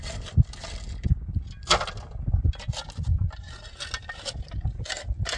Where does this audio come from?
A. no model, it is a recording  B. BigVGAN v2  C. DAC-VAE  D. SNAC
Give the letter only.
A